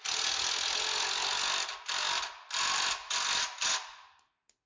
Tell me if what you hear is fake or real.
real